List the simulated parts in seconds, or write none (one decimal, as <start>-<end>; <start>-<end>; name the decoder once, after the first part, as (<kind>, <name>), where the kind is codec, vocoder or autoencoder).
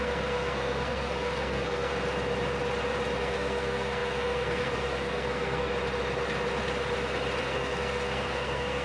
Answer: 0.0-1.9 (codec, SNAC); 3.2-5.7; 7.4-8.8